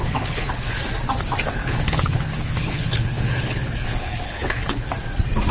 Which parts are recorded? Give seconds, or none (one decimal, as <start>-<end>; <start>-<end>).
0.8-1.6; 4.9-5.5